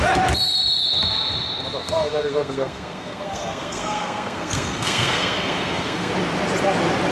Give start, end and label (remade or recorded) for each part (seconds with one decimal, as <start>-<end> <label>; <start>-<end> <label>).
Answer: 0.0-1.8 recorded; 1.8-6.1 remade; 6.1-7.1 recorded

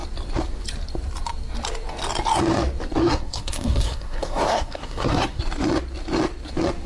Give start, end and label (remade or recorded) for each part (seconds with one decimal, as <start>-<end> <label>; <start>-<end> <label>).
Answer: 0.0-3.0 recorded; 3.0-5.4 remade; 5.4-6.9 recorded

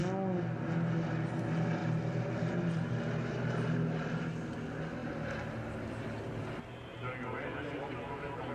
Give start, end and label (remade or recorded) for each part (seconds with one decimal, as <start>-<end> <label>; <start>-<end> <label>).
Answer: 0.0-8.5 recorded